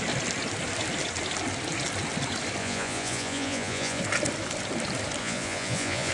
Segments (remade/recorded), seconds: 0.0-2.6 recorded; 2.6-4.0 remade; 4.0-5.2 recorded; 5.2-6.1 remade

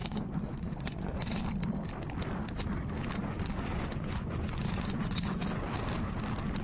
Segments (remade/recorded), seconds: 0.0-1.4 remade; 1.4-3.2 recorded; 3.2-5.4 remade; 5.4-6.6 recorded

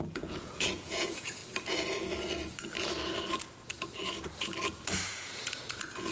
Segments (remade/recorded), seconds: 0.0-1.4 remade; 1.4-5.1 recorded; 5.1-6.1 remade

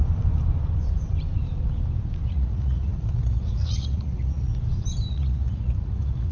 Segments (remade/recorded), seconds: 0.0-2.3 recorded; 2.3-4.5 remade; 4.5-5.1 recorded; 5.1-6.3 remade

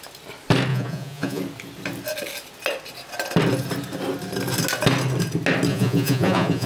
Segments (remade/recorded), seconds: 0.0-0.7 recorded; 0.7-1.4 remade; 1.4-5.7 recorded; 5.7-6.7 remade

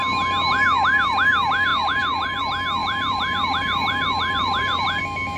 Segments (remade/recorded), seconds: 0.0-1.7 recorded; 1.7-2.4 remade; 2.4-2.8 recorded; 2.8-5.0 remade; 5.0-5.4 recorded